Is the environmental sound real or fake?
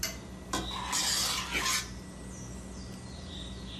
real